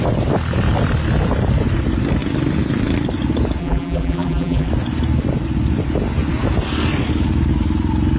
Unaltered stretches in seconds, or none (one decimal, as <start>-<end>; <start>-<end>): 0.0-3.6; 4.7-8.2